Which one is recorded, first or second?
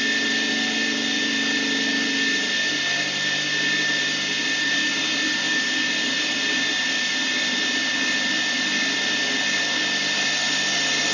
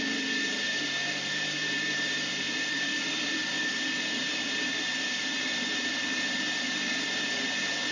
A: first